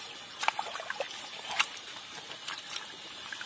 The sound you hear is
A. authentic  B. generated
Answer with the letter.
A